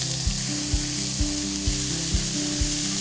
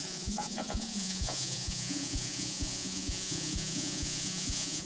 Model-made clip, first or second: second